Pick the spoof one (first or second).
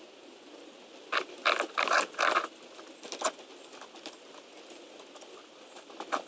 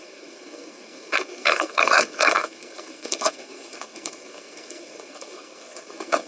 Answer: second